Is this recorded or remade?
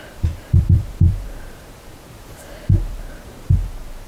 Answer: remade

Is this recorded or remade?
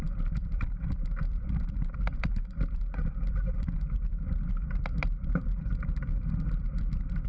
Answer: remade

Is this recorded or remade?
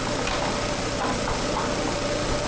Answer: recorded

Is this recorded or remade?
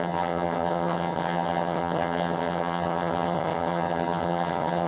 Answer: remade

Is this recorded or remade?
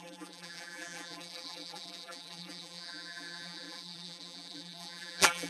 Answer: remade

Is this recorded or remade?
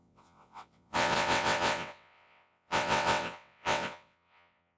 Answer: remade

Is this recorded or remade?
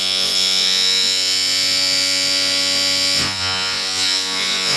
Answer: remade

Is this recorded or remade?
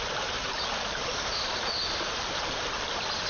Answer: recorded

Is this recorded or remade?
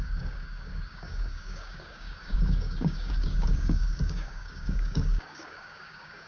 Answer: remade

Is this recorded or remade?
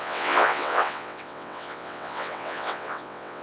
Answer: remade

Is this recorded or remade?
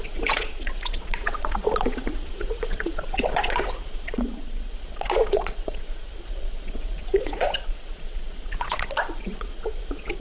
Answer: remade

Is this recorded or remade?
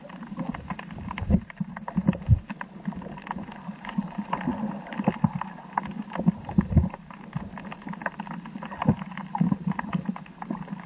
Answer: recorded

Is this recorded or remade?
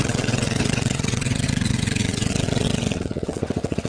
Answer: remade